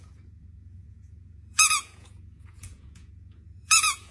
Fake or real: fake